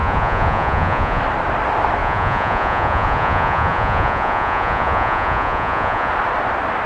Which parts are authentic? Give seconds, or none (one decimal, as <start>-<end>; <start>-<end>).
1.2-2.0; 6.1-6.9